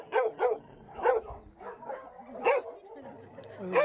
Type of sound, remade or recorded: recorded